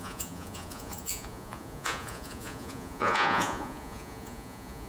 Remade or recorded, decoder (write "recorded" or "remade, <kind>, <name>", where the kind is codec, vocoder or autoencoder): remade, vocoder, Vocos